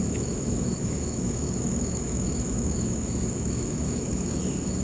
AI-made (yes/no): yes